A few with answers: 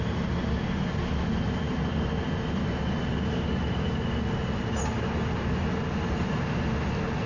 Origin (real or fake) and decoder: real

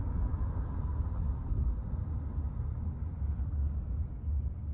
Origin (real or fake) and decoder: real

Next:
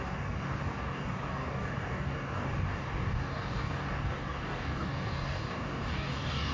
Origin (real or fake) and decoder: fake, codec, DAC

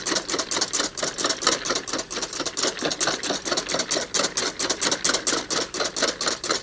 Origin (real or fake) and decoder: real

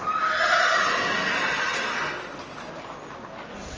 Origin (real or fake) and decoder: real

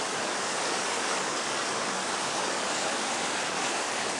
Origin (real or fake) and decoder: fake, codec, DAC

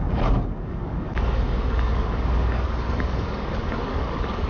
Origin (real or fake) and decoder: fake, codec, DAC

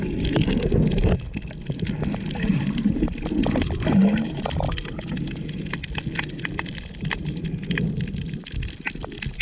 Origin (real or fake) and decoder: real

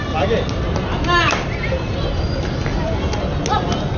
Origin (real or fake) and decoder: real